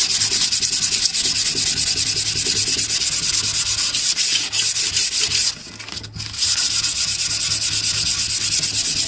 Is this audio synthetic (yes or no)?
no